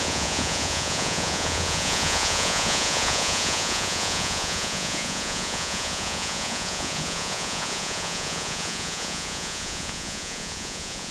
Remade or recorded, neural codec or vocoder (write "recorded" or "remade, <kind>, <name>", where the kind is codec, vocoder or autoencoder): remade, vocoder, Vocos